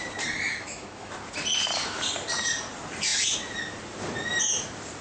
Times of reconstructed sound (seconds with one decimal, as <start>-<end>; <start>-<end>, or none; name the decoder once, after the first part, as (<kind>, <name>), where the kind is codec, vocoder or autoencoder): 0.5-1.1 (autoencoder, DAC-VAE)